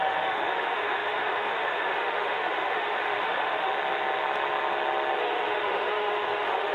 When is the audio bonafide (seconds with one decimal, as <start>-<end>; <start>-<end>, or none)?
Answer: 3.7-5.2